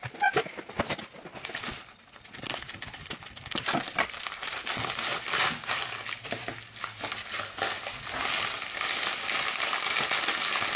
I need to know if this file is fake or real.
real